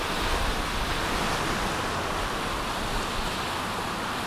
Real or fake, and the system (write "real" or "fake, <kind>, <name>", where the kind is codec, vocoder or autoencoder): real